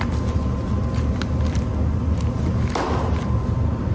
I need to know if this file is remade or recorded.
recorded